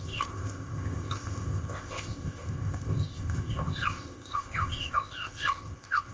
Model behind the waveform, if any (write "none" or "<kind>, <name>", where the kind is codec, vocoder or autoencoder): codec, ZipCodec